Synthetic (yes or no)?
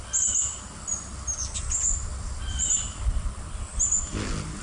no